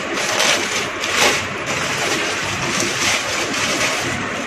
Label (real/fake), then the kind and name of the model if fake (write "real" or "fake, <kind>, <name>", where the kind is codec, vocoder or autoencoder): fake, vocoder, BigVGAN v2